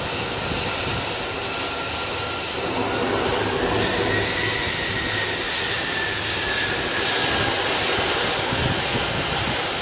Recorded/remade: recorded